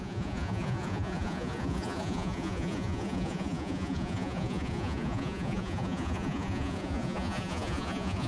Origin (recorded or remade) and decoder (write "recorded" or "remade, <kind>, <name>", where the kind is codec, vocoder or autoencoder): remade, vocoder, Vocos